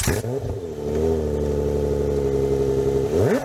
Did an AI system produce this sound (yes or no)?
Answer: no